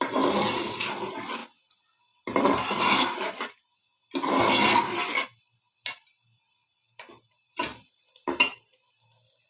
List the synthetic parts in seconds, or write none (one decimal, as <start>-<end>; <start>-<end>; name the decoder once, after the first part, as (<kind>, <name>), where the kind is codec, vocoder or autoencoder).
none